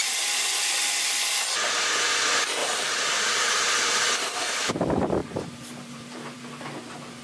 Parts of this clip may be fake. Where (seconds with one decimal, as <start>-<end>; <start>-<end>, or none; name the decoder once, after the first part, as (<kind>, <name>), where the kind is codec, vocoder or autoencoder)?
2.6-4.7 (vocoder, BigVGAN v2); 5.2-6.4